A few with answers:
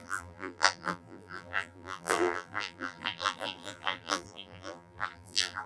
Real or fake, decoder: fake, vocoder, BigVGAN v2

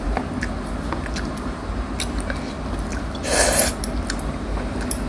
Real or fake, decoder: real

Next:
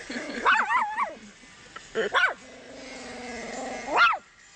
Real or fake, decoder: real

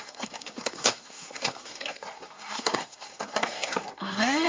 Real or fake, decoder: fake, codec, SNAC